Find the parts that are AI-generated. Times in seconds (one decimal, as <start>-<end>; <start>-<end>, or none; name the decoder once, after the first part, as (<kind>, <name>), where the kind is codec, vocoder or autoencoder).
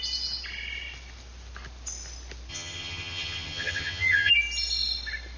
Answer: 2.5-4.3 (vocoder, HiFi-GAN)